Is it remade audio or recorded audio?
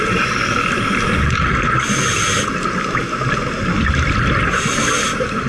recorded